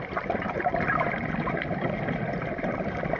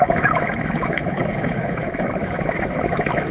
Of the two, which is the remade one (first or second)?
second